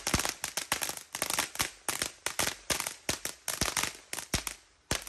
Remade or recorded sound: recorded